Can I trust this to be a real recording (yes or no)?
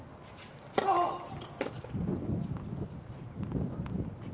yes